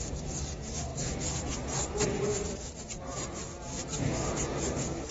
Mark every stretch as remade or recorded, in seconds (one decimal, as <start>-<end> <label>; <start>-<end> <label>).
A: 0.0-5.1 recorded